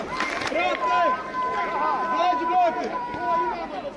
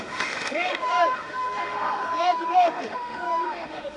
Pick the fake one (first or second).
second